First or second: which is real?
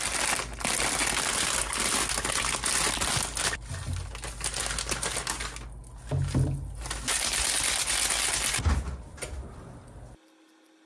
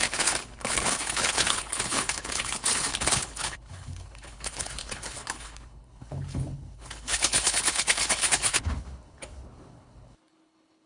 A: first